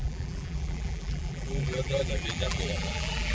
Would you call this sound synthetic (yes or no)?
yes